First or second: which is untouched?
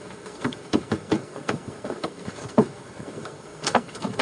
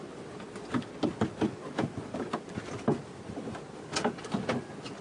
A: second